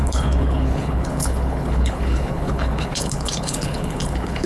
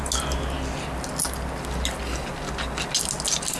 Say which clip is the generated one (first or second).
first